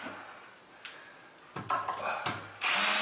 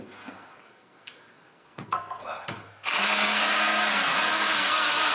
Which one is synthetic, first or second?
second